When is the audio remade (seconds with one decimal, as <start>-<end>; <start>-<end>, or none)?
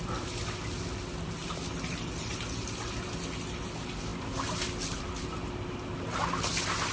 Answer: 1.4-2.4